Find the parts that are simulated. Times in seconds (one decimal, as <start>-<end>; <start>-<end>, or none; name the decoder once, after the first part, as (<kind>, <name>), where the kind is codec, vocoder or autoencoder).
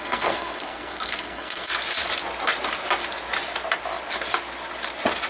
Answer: 0.0-1.7 (codec, SNAC)